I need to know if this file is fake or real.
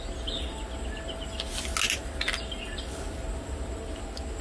real